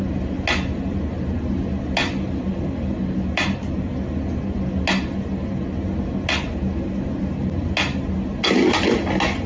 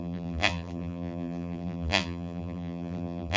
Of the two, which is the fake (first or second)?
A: second